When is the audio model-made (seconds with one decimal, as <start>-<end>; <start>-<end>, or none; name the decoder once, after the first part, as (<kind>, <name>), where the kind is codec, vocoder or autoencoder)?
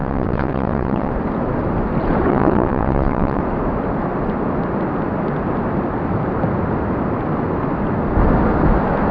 0.0-1.1 (vocoder, WaveNeXt); 2.3-3.4